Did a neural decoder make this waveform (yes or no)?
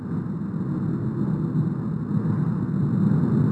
no